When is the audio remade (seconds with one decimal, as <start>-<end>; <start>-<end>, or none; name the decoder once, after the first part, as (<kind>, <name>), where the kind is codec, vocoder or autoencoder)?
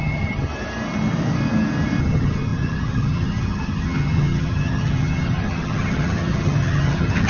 0.0-0.5 (vocoder, HiFi-GAN); 2.0-7.3